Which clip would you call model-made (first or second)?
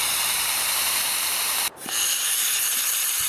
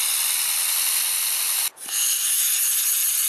first